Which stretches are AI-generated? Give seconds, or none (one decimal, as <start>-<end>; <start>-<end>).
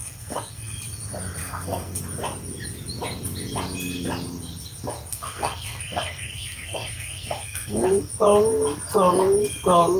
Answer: 0.0-0.8; 1.4-2.0; 5.1-8.1